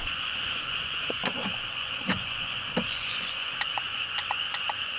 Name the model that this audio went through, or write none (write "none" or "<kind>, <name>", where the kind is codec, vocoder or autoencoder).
vocoder, Vocos